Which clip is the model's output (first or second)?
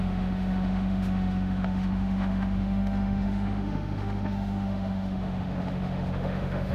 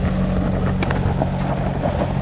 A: first